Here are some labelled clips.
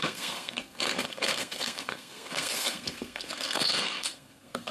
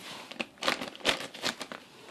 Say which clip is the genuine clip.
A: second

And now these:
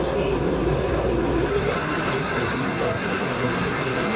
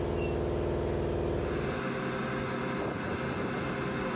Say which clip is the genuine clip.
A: second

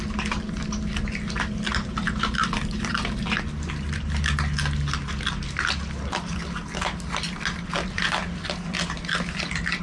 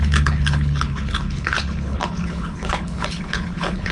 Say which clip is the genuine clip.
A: first